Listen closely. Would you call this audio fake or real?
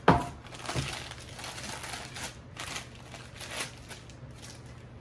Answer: real